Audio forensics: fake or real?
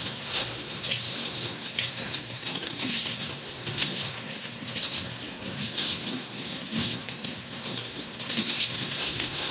fake